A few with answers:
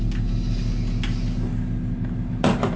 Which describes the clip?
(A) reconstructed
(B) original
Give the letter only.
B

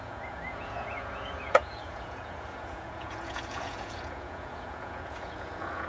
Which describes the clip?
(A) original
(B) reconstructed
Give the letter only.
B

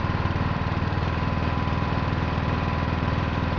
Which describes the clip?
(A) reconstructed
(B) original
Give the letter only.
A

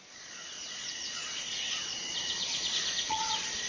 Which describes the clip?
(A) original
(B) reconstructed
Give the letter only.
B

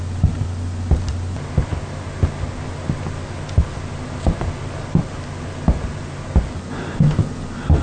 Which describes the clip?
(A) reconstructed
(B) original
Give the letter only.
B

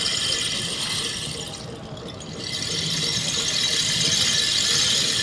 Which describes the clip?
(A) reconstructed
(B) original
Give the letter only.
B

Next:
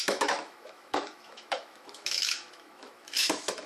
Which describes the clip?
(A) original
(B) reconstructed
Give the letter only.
B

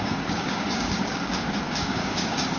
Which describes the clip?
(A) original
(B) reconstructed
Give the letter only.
B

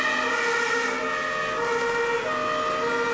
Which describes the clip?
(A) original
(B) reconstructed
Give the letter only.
A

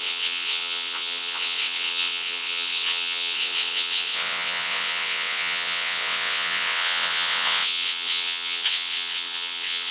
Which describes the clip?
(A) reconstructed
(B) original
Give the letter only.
A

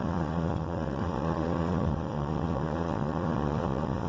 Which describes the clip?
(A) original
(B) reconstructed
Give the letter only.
B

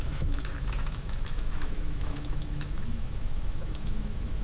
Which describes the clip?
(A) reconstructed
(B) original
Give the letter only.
A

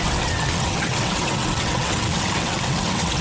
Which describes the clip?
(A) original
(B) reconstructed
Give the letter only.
B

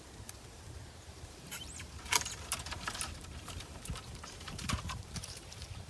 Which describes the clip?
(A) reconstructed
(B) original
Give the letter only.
A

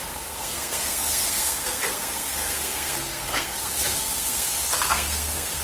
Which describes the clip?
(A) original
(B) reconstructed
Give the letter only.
B